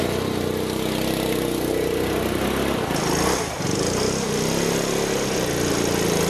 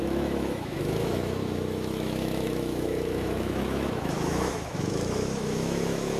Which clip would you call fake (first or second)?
second